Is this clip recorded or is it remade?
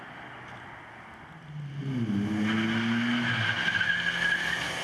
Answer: recorded